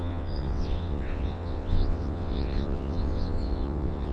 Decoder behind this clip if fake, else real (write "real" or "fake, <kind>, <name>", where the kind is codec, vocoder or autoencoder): fake, vocoder, WaveNeXt